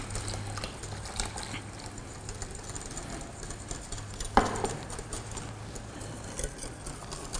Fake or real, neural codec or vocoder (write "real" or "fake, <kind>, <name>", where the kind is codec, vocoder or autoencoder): real